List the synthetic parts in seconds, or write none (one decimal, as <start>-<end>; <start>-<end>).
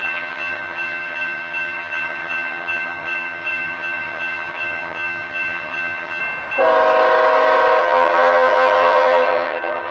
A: 0.0-6.2; 7.8-9.9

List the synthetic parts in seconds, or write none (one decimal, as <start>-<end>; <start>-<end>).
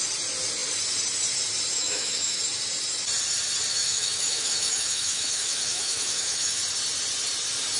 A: 1.7-2.4; 3.7-6.6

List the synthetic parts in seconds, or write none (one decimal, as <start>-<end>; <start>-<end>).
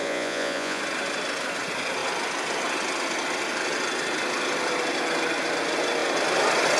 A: 0.0-0.8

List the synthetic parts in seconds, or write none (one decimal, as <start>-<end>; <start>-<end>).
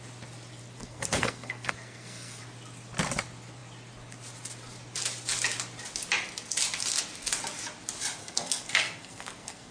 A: 0.8-2.4; 8.2-9.7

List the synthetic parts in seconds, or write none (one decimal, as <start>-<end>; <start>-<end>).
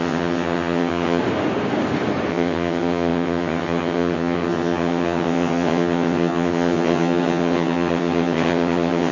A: 0.0-1.2; 2.3-9.1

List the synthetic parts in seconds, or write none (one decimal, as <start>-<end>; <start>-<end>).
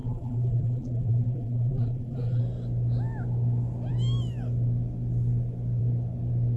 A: 0.0-2.4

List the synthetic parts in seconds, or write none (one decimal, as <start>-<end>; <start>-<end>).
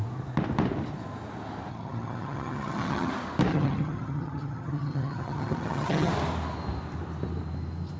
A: 1.7-3.1; 3.5-6.1